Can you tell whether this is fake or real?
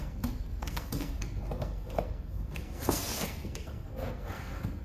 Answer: fake